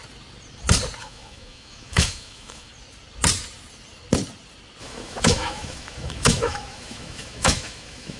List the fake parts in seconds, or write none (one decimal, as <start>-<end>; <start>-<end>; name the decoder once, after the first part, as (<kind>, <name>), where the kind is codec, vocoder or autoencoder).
1.0-2.7 (autoencoder, DAC-VAE); 4.8-8.2